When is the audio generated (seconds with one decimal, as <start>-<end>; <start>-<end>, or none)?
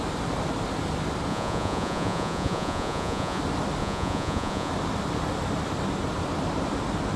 1.3-3.4; 3.8-4.7